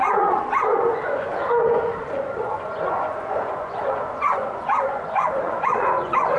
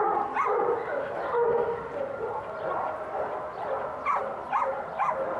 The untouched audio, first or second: second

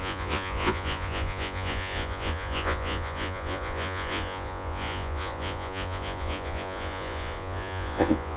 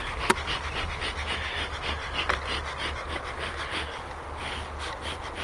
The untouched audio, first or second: second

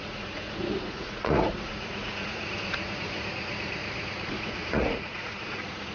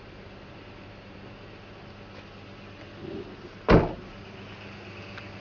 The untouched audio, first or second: second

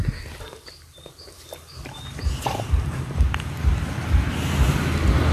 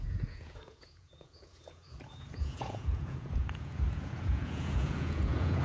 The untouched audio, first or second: first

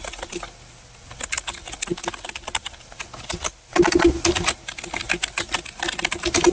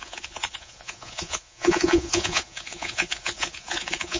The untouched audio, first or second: first